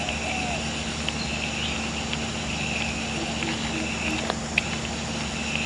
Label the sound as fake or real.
real